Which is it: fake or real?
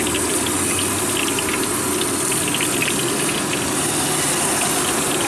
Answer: real